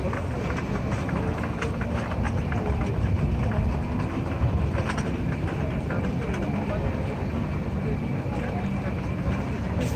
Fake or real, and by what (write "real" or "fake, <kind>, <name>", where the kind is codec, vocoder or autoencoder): real